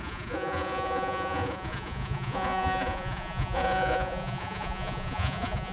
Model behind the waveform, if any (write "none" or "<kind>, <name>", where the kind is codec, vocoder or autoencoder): vocoder, Vocos